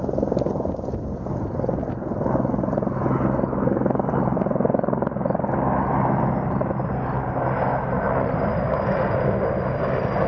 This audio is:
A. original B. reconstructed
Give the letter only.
A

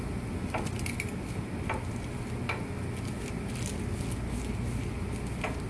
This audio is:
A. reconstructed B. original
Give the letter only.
B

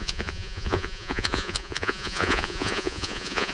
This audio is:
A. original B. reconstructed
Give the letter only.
B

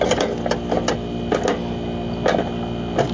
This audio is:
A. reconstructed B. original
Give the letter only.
B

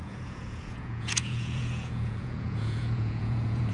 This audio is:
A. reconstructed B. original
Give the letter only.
A